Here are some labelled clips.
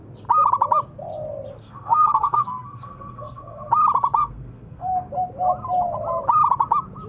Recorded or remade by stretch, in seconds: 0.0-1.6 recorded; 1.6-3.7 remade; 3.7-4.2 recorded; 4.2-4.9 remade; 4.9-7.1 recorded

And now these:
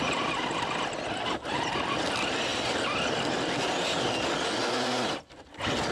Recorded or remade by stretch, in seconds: 0.0-2.5 recorded; 2.5-4.0 remade; 4.0-5.9 recorded

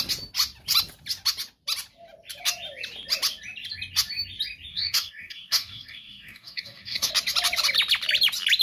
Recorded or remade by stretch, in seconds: 0.0-4.7 recorded; 4.7-7.1 remade; 7.1-8.6 recorded

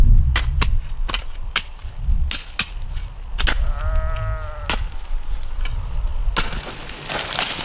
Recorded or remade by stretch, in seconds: 0.0-7.6 recorded